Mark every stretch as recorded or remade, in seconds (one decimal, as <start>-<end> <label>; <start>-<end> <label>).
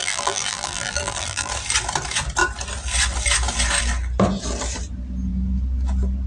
0.0-1.5 remade; 1.5-6.3 recorded